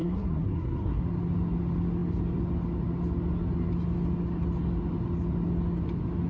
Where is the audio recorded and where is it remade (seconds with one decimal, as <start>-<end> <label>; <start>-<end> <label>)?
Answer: 0.0-1.0 remade; 1.0-6.3 recorded